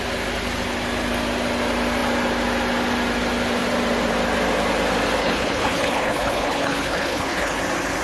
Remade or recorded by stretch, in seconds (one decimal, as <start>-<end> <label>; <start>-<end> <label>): 0.0-5.2 recorded; 5.2-7.6 remade; 7.6-8.0 recorded